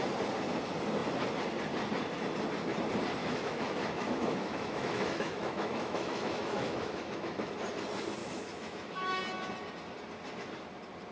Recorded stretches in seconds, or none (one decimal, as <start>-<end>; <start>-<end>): 0.0-3.2; 7.5-8.2; 9.2-11.1